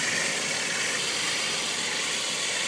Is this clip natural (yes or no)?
yes